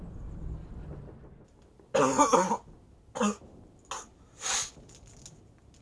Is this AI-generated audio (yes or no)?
no